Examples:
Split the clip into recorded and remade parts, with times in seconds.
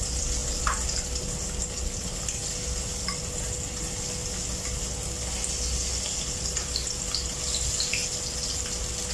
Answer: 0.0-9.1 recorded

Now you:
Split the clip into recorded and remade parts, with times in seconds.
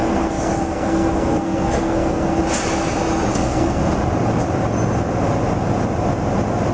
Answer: 0.0-2.4 remade; 2.4-3.3 recorded; 3.3-3.8 remade; 3.8-6.7 recorded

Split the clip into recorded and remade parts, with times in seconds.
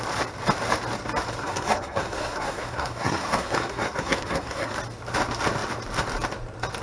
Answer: 0.0-1.4 recorded; 1.4-4.7 remade; 4.7-6.8 recorded